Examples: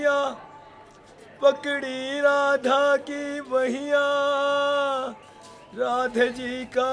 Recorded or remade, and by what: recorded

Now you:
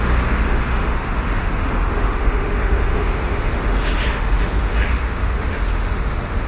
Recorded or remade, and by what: remade, autoencoder, DAC-VAE